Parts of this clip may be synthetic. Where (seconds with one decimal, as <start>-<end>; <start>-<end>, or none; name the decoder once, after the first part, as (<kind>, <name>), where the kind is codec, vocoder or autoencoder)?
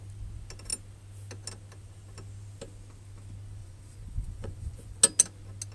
3.6-5.0 (vocoder, Vocos)